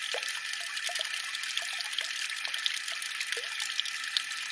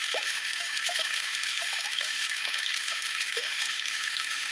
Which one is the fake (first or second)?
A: second